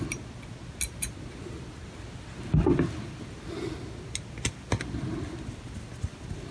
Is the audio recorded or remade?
recorded